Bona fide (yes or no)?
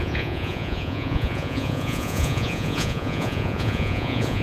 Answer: no